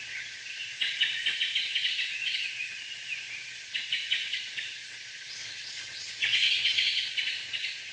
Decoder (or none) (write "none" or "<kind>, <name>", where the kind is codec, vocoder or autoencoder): vocoder, Vocos